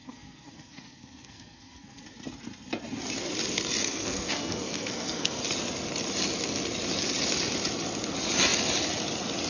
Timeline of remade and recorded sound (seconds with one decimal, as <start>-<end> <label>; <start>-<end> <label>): 0.0-2.0 remade; 2.0-3.8 recorded; 3.8-5.4 remade; 5.4-9.5 recorded

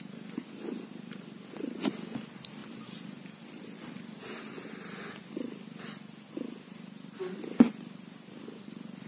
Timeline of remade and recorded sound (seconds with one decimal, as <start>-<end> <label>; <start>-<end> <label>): 0.0-9.1 recorded

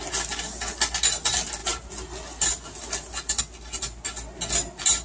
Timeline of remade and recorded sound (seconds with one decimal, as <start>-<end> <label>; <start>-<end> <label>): 0.0-5.0 recorded

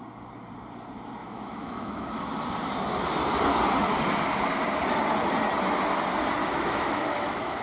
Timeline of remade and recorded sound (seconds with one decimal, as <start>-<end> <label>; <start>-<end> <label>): 0.0-1.2 recorded; 1.2-2.2 remade; 2.2-6.4 recorded; 6.4-7.6 remade

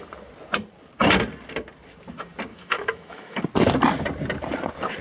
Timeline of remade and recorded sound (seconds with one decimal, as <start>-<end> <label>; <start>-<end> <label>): 0.0-2.5 recorded; 2.5-3.4 remade; 3.4-5.0 recorded

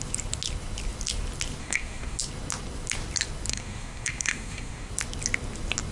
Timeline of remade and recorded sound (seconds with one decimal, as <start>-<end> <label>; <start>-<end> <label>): 0.0-1.6 recorded; 1.6-2.2 remade; 2.2-3.5 recorded; 3.5-4.9 remade; 4.9-5.9 recorded

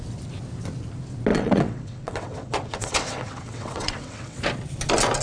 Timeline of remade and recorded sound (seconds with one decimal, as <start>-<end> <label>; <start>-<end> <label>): 0.0-1.3 recorded; 1.3-4.4 remade; 4.4-5.2 recorded

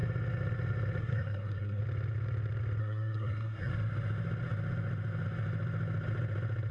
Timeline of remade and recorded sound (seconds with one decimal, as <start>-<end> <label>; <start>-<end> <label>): 0.0-1.0 recorded; 1.0-1.8 remade; 1.8-2.8 recorded; 2.8-3.7 remade; 3.7-6.7 recorded